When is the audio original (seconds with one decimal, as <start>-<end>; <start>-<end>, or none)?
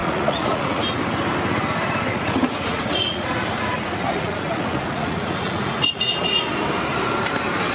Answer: 0.8-2.1; 6.4-7.7